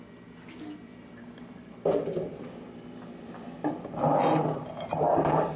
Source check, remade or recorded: recorded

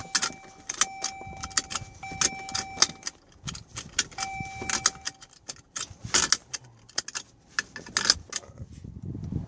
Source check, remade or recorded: recorded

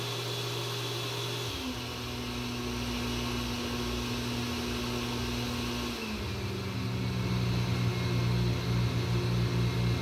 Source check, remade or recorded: recorded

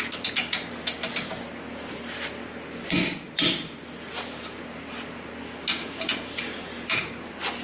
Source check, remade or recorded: recorded